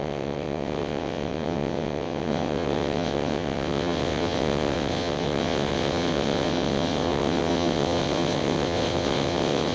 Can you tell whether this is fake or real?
fake